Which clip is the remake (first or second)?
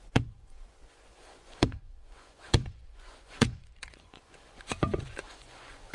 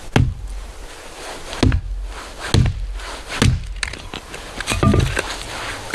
first